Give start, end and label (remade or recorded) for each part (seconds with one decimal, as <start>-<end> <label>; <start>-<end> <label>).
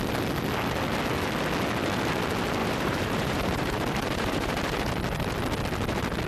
0.0-2.6 recorded; 2.6-4.9 remade; 4.9-6.3 recorded